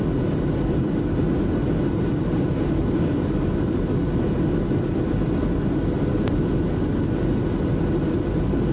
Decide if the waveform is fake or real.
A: real